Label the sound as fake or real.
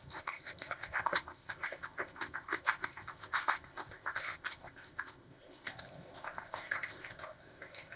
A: fake